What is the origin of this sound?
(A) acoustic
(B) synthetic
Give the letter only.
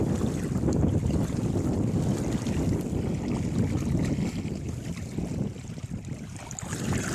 A